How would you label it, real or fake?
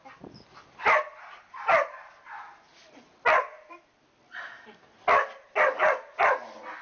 real